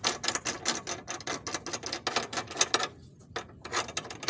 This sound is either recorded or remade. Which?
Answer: recorded